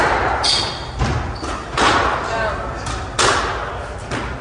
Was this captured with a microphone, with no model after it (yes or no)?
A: yes